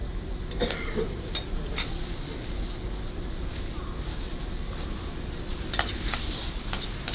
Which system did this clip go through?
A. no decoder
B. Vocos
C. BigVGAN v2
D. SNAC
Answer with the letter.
A